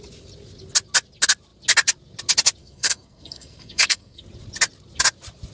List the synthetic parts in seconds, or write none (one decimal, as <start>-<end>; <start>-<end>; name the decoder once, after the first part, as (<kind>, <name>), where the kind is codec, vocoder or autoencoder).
2.6-4.2 (codec, SNAC)